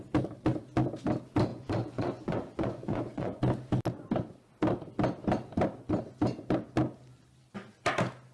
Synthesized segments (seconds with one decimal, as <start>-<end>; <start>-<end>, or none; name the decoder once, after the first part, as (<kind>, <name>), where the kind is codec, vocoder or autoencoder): 1.5-3.4 (vocoder, Vocos)